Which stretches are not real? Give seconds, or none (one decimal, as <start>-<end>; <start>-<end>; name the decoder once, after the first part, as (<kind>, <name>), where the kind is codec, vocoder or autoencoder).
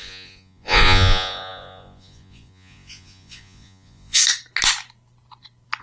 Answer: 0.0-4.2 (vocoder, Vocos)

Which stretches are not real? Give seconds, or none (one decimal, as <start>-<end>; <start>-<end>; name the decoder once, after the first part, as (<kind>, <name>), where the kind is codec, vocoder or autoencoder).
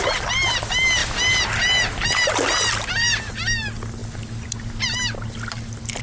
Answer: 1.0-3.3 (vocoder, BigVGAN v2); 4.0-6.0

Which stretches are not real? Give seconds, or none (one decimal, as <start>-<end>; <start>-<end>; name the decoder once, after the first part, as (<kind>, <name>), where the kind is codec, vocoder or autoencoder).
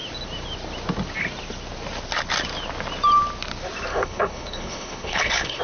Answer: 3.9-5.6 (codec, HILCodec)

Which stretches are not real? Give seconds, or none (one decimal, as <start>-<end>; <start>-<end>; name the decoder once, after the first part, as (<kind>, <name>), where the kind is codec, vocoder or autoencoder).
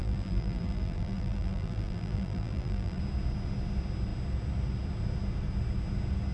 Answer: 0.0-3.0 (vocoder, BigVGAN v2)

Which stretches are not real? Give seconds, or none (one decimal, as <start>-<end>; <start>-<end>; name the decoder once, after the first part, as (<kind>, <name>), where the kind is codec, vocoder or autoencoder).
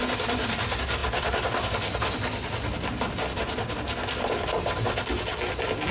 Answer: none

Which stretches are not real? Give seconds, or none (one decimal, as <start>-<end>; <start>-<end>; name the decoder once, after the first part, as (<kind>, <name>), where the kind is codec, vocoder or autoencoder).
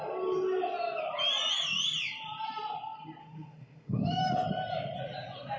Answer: 3.2-4.2 (autoencoder, DAC-VAE)